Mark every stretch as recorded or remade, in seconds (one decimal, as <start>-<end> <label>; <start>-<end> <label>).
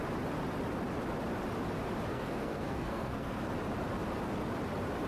0.0-2.1 recorded; 2.1-3.5 remade; 3.5-5.1 recorded